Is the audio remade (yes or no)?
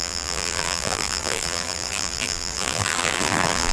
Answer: yes